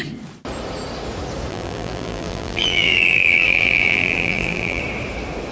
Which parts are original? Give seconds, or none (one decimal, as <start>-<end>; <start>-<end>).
0.0-1.5; 4.8-5.5